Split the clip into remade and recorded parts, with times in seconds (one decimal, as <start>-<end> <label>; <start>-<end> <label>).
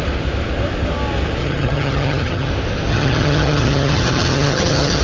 0.0-1.4 recorded; 1.4-2.5 remade; 2.5-2.9 recorded; 2.9-5.0 remade